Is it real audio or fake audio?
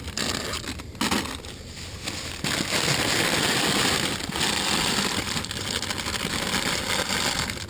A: real